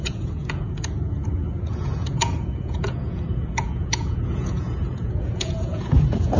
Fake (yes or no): yes